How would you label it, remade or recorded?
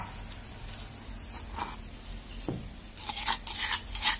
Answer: recorded